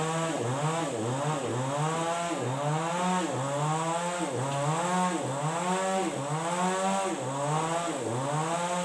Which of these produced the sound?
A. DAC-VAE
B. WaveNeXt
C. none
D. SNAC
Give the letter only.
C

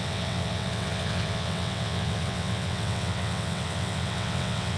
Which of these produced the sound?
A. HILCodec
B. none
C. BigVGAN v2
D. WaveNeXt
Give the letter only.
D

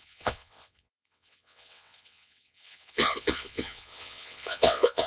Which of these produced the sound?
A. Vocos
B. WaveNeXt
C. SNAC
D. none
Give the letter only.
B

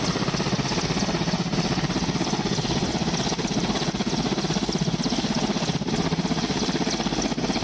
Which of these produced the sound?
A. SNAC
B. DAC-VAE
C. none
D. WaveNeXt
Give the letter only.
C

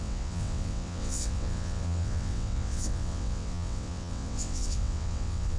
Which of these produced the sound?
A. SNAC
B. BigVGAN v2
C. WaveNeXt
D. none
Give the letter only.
C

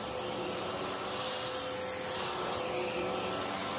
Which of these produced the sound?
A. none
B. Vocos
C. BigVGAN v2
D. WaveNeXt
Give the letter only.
A